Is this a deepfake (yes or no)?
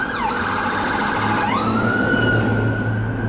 no